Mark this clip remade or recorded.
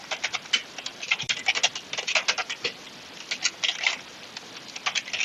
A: recorded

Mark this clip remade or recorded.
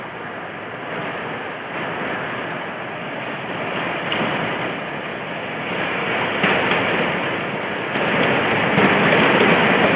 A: recorded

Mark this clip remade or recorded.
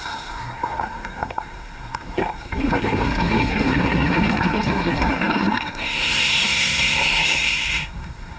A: remade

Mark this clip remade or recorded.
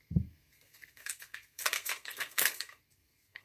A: remade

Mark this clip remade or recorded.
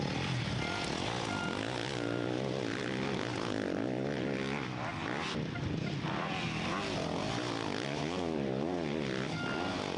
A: recorded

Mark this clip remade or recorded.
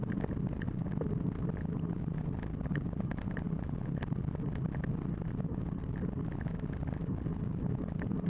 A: recorded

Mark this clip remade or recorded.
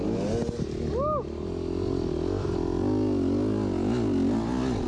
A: recorded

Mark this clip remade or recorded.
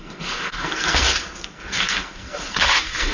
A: remade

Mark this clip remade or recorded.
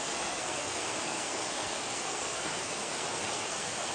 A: remade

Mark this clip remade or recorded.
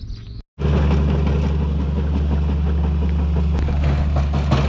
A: recorded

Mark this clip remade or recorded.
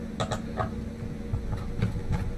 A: recorded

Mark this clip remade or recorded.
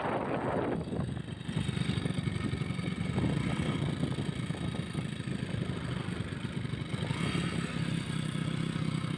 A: recorded